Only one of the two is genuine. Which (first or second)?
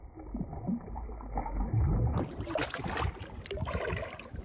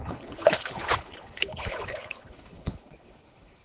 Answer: first